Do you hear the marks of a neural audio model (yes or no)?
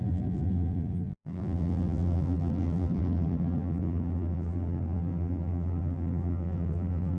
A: yes